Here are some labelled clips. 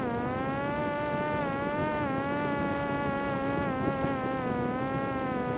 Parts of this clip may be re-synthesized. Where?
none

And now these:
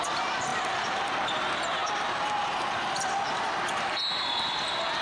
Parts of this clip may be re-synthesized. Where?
0.5-1.1 (vocoder, BigVGAN v2)

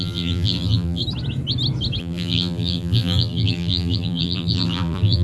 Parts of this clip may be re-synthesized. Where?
0.0-1.0 (vocoder, BigVGAN v2); 2.0-5.2

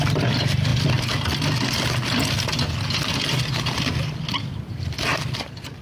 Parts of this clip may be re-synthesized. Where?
none

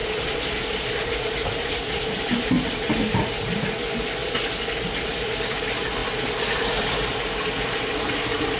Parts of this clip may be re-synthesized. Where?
0.0-2.9 (vocoder, BigVGAN v2)

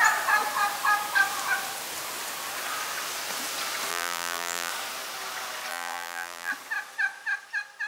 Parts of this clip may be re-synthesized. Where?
3.9-4.7 (vocoder, BigVGAN v2); 5.7-6.5

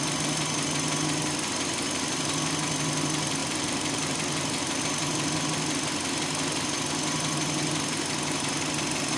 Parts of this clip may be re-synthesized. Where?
3.4-4.8 (vocoder, BigVGAN v2)